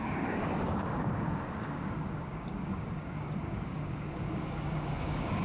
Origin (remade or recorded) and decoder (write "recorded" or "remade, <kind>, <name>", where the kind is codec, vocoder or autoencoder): remade, codec, DAC